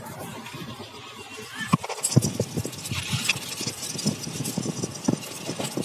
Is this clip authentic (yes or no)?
yes